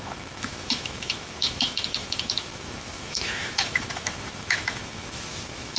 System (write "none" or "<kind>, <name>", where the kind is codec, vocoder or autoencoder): autoencoder, DAC-VAE